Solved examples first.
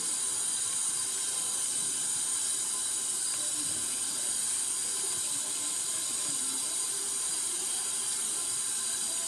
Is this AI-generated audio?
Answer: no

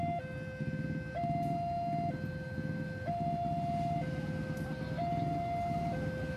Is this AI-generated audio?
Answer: no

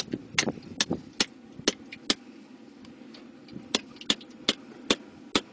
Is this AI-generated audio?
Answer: no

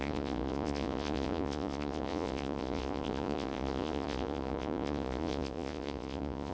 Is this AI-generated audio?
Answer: yes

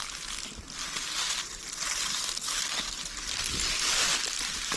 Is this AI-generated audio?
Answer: no